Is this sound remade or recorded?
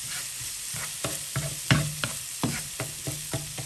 recorded